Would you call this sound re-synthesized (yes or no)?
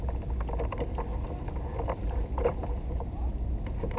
no